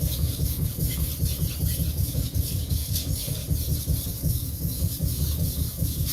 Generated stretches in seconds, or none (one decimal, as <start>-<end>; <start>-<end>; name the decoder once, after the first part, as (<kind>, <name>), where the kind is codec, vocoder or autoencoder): 0.0-1.1 (codec, DAC); 1.9-3.4; 4.1-6.1

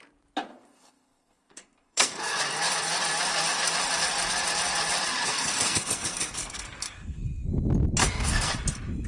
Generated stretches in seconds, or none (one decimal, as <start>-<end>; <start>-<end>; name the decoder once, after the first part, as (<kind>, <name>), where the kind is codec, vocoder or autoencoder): 0.5-2.4 (codec, SNAC); 5.3-7.5; 8.0-8.5

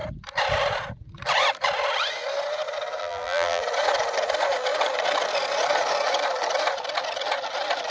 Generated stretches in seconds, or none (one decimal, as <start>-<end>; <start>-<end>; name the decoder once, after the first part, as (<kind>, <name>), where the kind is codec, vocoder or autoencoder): 3.0-3.6 (vocoder, BigVGAN v2)

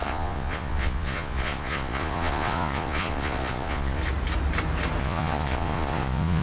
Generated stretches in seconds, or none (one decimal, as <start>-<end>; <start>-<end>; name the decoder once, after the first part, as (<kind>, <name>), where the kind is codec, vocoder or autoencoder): 0.0-4.0 (vocoder, Vocos); 5.0-6.4

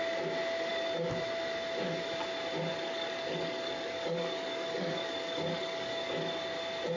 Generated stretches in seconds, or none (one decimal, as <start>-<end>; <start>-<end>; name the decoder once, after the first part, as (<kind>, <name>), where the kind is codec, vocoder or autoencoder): 0.7-1.2 (codec, DAC); 2.7-6.3

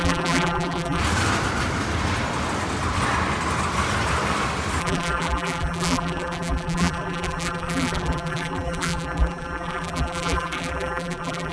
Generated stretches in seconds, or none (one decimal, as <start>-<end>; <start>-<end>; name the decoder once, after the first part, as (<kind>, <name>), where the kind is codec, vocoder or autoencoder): 0.0-1.0 (vocoder, BigVGAN v2); 4.8-11.5

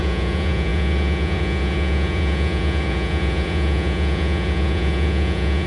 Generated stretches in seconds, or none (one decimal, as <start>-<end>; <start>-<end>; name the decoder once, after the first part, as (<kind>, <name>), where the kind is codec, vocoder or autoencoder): 0.0-5.7 (vocoder, Vocos)